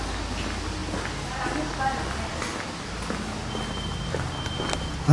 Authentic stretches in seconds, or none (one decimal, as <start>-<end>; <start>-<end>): 0.0-5.1